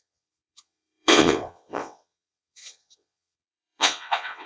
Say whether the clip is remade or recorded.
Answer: remade